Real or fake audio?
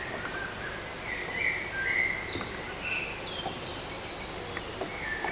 real